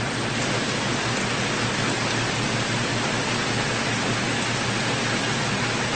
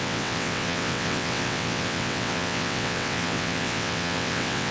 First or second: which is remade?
second